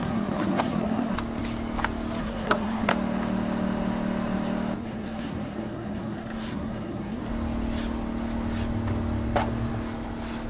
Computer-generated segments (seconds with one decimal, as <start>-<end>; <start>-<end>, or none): 0.0-1.1; 2.2-2.9; 4.8-7.2